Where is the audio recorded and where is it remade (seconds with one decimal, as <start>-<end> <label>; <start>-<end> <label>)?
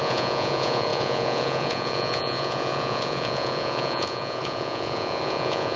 0.0-5.8 remade